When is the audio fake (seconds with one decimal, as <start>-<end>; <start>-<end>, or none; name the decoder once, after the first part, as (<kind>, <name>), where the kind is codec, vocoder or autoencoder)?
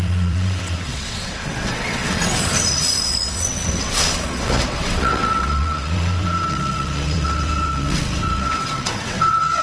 0.0-9.6 (vocoder, WaveNeXt)